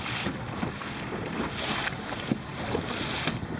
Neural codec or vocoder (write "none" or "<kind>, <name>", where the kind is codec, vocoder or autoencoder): none